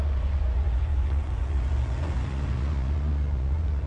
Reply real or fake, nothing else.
fake